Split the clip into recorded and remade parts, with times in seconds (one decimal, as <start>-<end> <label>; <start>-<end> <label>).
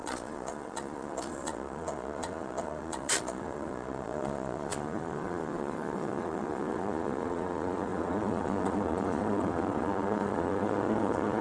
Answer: 0.0-11.4 remade